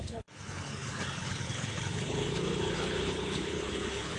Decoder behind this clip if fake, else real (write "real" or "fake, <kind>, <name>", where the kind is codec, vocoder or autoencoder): fake, codec, HILCodec